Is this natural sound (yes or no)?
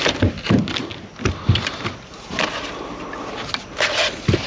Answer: yes